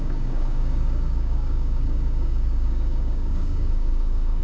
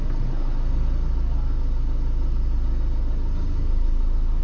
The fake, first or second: first